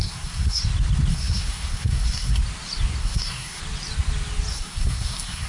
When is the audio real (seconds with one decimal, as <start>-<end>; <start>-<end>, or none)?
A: 0.6-1.1; 2.4-3.0; 3.6-4.5